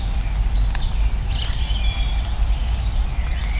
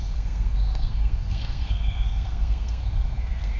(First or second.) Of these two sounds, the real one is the first